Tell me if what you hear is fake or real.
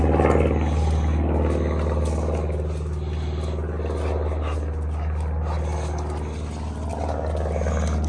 real